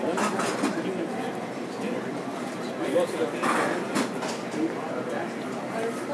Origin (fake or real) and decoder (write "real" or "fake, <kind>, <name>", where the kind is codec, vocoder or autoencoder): real